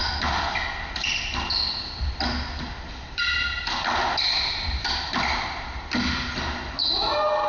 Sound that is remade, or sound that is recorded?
recorded